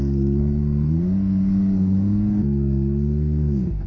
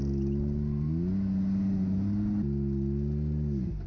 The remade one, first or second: first